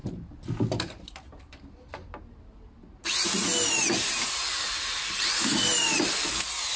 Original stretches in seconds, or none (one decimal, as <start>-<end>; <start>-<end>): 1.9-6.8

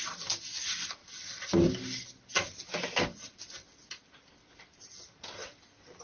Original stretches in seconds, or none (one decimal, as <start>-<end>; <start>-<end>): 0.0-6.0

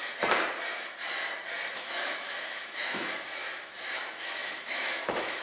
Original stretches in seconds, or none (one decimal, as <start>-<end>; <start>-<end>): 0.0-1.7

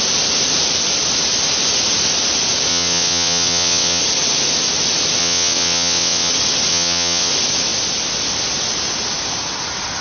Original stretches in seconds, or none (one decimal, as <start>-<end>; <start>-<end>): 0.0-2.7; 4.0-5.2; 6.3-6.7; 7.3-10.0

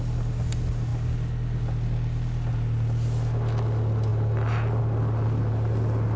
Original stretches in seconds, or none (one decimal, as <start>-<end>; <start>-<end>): 0.0-6.2

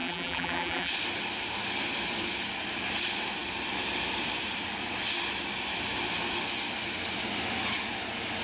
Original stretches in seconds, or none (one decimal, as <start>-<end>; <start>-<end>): 0.9-8.4